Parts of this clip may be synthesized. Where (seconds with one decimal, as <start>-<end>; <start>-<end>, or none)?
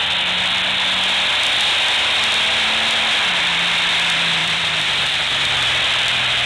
4.4-5.5